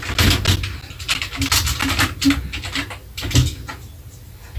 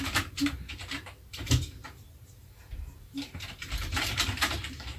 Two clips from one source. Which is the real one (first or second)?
first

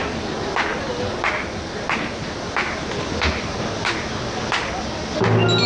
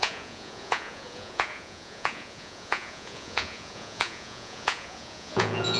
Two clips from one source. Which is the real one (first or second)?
first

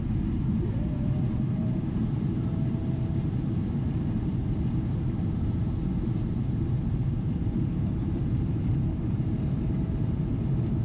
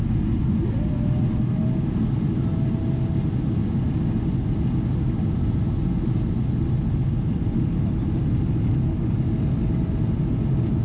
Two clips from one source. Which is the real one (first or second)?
second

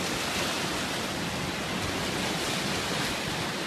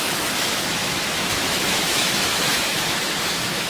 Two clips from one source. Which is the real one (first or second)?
first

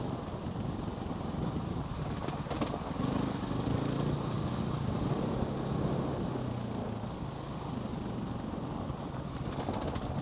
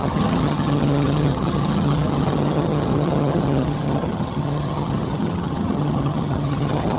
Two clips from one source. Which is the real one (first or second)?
first